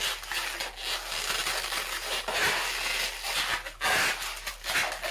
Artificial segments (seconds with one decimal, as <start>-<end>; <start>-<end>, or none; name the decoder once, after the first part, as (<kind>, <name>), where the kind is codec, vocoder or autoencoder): none

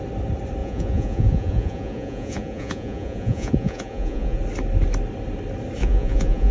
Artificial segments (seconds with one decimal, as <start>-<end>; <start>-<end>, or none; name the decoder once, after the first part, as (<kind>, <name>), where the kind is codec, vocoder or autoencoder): 0.6-4.4 (vocoder, Vocos); 5.8-6.5

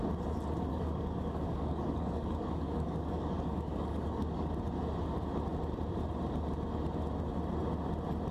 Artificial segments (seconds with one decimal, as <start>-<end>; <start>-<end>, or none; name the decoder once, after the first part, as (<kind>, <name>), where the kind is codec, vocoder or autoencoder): 0.7-4.5 (codec, DAC)

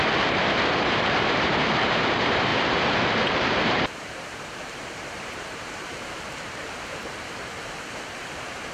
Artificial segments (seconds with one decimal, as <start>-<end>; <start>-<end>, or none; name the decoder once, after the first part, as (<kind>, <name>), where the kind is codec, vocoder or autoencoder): 0.0-8.7 (vocoder, BigVGAN v2)

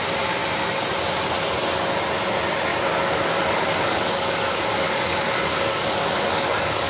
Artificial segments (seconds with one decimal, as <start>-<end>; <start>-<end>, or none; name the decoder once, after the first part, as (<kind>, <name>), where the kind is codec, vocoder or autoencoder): 2.7-6.9 (codec, DAC)

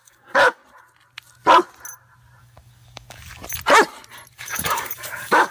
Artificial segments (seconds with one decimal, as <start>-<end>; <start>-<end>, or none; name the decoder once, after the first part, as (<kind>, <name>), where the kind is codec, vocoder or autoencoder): 0.0-0.6 (codec, DAC); 2.4-3.4; 4.3-5.5

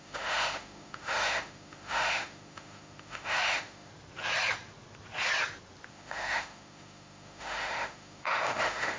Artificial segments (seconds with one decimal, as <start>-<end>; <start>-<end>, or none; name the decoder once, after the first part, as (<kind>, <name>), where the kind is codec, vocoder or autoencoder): 0.0-3.9 (autoencoder, DAC-VAE); 5.9-9.0

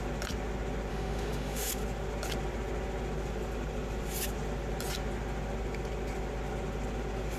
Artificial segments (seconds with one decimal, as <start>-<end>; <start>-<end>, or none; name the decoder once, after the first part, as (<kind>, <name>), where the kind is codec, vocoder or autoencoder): 0.9-1.7 (autoencoder, DAC-VAE)